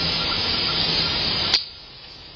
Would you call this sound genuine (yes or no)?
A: yes